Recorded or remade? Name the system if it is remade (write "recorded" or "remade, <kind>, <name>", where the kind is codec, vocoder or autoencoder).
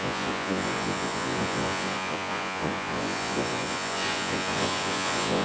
remade, vocoder, Vocos